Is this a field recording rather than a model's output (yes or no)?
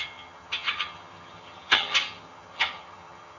no